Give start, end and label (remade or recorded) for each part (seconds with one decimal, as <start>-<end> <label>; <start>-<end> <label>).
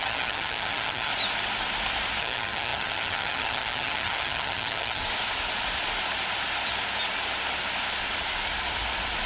0.0-1.1 remade; 1.1-2.2 recorded; 2.2-5.0 remade; 5.0-9.3 recorded